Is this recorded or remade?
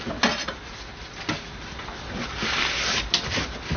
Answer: recorded